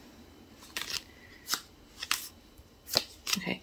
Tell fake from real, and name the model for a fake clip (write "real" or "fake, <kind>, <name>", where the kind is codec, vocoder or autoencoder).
real